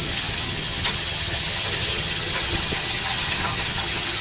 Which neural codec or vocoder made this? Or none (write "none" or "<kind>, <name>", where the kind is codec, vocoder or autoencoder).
vocoder, HiFi-GAN